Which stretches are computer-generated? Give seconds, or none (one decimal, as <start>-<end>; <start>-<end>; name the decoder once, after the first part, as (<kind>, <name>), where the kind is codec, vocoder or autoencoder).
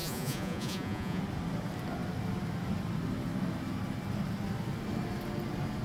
0.0-1.2 (vocoder, Vocos)